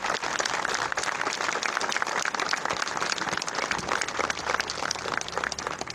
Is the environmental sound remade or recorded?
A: recorded